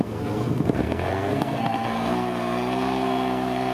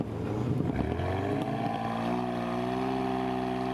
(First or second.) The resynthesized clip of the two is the first